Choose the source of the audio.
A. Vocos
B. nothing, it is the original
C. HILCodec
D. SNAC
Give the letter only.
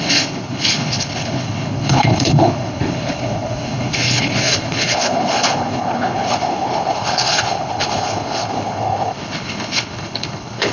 C